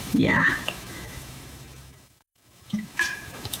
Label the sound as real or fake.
fake